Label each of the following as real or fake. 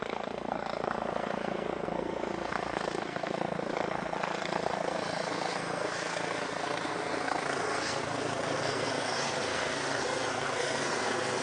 fake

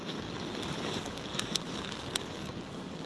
fake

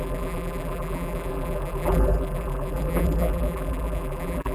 fake